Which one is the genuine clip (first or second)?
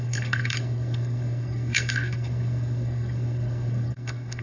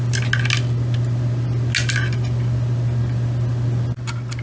second